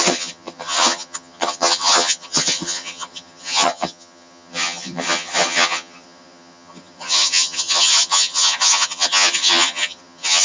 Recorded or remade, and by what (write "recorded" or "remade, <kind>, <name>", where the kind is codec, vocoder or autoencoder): remade, vocoder, HiFi-GAN